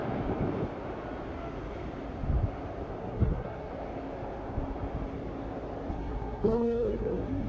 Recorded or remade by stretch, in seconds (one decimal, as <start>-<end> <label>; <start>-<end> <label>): 0.0-3.0 recorded; 3.0-3.7 remade; 3.7-5.9 recorded; 5.9-7.5 remade